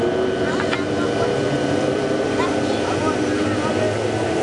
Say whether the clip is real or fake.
real